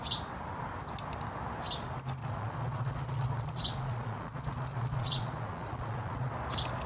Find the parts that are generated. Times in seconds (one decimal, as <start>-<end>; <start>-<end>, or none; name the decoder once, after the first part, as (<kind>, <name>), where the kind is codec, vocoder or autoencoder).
2.2-6.3 (vocoder, Vocos)